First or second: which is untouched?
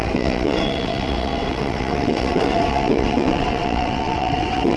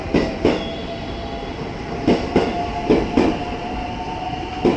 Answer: second